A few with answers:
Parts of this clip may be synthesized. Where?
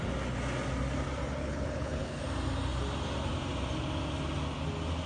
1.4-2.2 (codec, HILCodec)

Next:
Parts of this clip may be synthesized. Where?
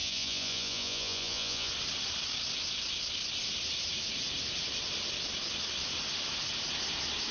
0.0-1.7 (vocoder, Vocos)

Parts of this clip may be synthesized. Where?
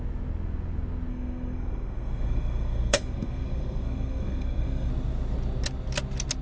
1.1-4.9 (codec, SNAC)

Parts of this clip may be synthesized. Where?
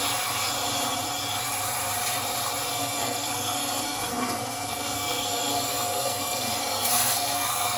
2.7-7.8 (codec, SNAC)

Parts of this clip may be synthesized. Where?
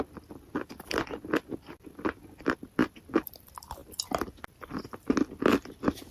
none